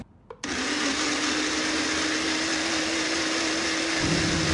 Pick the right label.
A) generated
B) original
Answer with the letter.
B